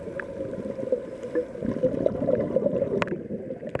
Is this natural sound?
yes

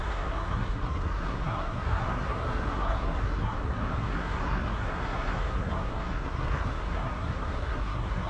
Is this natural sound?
no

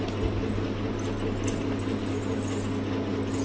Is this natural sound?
yes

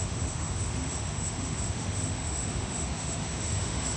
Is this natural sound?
no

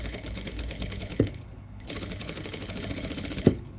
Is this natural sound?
no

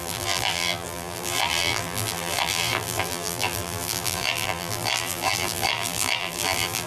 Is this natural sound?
no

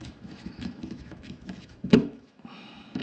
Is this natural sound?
no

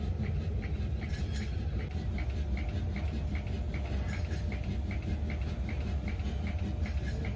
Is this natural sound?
yes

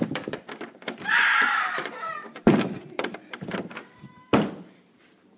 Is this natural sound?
no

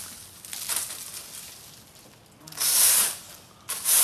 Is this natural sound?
yes